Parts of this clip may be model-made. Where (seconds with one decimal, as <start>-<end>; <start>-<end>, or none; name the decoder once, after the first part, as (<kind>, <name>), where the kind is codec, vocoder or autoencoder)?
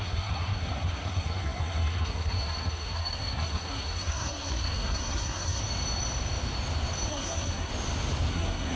0.0-5.6 (codec, SNAC); 7.1-7.7; 8.3-8.8